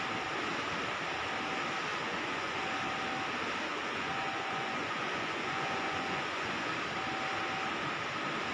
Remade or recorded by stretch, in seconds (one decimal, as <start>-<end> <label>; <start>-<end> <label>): 0.0-1.9 recorded; 1.9-2.6 remade; 2.6-3.7 recorded; 3.7-6.7 remade; 6.7-8.5 recorded

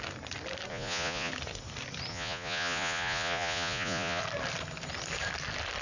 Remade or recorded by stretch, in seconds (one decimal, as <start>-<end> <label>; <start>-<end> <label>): 0.0-0.7 recorded; 0.7-1.3 remade; 1.3-2.1 recorded; 2.1-4.2 remade; 4.2-5.8 recorded

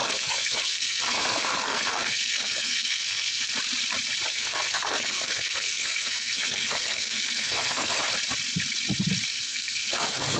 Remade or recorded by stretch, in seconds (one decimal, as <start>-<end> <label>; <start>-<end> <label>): 0.0-3.5 remade; 3.5-4.3 recorded; 4.3-8.0 remade; 8.0-9.3 recorded; 9.3-10.4 remade

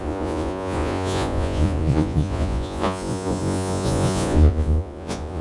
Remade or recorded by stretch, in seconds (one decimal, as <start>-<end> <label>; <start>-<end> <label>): 0.0-5.4 remade

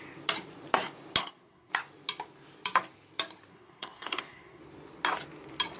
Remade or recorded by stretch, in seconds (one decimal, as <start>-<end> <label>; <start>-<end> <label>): 0.0-1.2 recorded; 1.2-1.7 remade; 1.7-3.5 recorded; 3.5-4.6 remade; 4.6-5.8 recorded